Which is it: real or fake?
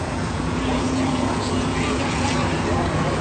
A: fake